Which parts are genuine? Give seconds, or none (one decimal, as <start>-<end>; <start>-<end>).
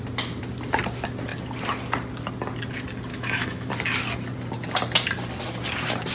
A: 0.0-3.1; 3.7-6.1